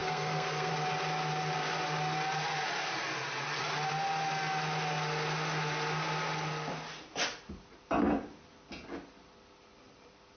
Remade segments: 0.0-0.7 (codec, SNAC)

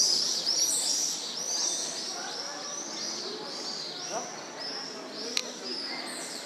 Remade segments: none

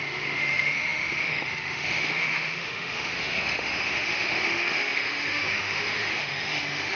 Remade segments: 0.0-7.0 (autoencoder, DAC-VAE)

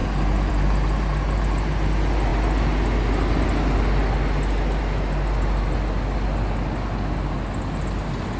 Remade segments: none

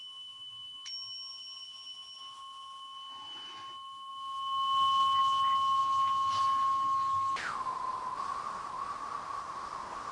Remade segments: none